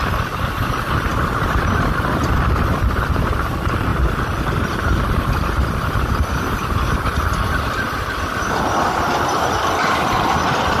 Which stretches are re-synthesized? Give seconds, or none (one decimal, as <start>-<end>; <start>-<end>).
0.0-1.1; 1.7-3.9; 5.9-10.8